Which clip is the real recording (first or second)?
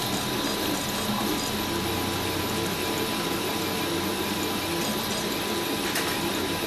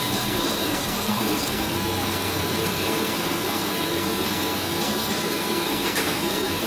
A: first